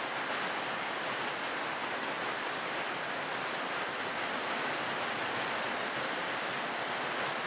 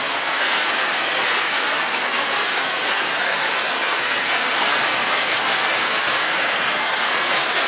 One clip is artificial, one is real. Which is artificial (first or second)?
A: second